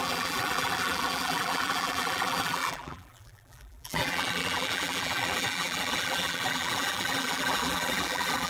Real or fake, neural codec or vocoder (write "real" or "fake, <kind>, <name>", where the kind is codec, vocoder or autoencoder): fake, vocoder, BigVGAN v2